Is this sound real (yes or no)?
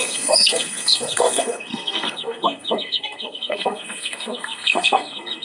no